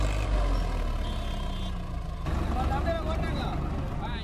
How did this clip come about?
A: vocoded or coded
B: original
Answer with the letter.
B